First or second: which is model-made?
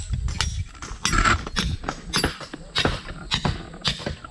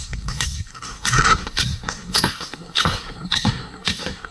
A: second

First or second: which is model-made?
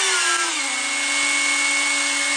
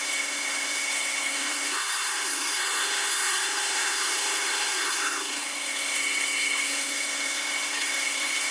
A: second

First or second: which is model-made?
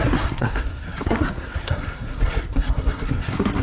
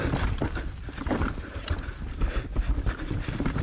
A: first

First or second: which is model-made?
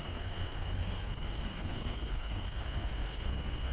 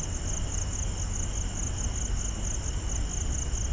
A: first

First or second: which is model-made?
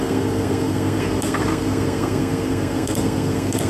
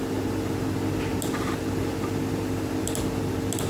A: first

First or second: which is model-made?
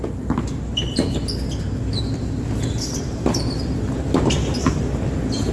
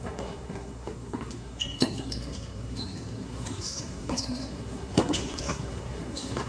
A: second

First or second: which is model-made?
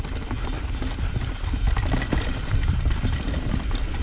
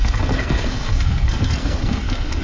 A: second